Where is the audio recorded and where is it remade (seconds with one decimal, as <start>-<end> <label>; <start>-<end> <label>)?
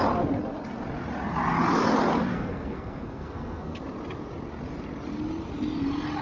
0.0-2.3 recorded; 2.3-3.8 remade; 3.8-6.2 recorded